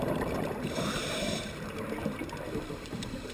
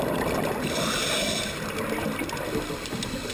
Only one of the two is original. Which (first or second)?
second